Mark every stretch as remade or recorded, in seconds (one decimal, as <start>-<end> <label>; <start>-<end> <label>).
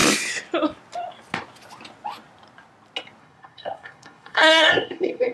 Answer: 0.0-3.2 recorded; 3.2-5.3 remade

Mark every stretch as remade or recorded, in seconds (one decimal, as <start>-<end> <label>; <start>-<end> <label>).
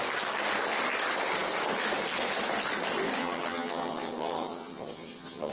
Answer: 0.0-3.2 recorded; 3.2-5.5 remade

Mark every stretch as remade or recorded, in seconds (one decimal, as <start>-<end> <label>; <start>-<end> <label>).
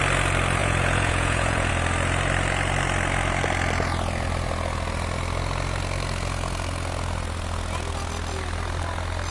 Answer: 0.0-0.6 recorded; 0.6-1.7 remade; 1.7-9.3 recorded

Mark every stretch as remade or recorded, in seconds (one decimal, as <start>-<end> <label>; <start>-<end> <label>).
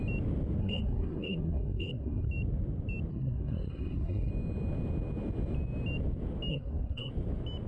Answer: 0.0-0.6 recorded; 0.6-2.3 remade; 2.3-3.1 recorded; 3.1-4.3 remade; 4.3-6.5 recorded; 6.5-7.1 remade; 7.1-7.7 recorded